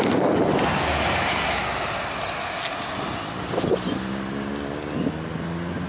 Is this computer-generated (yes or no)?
no